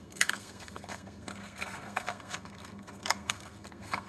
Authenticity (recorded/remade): remade